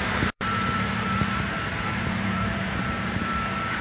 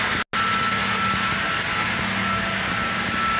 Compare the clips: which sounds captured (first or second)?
second